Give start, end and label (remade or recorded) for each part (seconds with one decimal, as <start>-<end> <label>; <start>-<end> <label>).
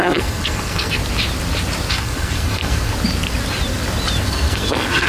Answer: 0.0-1.0 remade; 1.0-1.9 recorded; 1.9-2.9 remade; 2.9-4.2 recorded; 4.2-5.1 remade